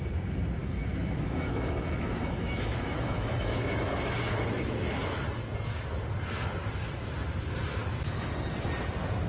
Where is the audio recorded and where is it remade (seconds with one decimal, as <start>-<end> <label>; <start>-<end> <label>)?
0.0-0.6 recorded; 0.6-5.2 remade; 5.2-7.8 recorded; 7.8-8.3 remade; 8.3-9.3 recorded